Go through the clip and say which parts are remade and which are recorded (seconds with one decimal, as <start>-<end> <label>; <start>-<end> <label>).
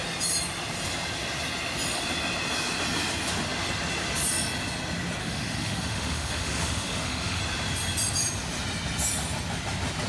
0.0-5.2 recorded; 5.2-7.4 remade; 7.4-10.1 recorded